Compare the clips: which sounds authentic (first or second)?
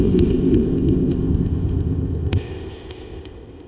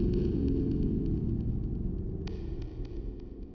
second